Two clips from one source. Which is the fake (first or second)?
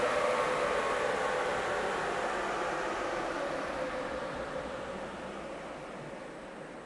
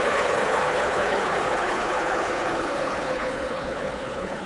second